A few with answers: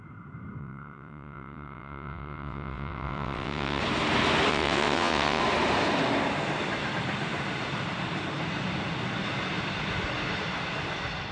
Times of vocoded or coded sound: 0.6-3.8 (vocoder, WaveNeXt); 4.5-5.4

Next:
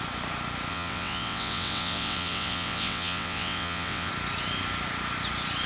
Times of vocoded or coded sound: 0.7-4.1 (vocoder, WaveNeXt)